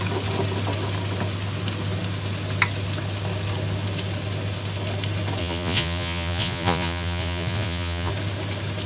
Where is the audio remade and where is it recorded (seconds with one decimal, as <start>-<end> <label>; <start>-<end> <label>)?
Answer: 0.0-5.4 recorded; 5.4-8.1 remade; 8.1-8.9 recorded